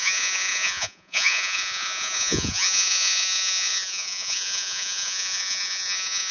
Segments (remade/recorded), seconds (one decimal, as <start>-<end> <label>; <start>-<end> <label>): 0.0-6.3 remade